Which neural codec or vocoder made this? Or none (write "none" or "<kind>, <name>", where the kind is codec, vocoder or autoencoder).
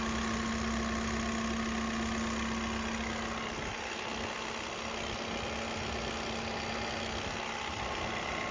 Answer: none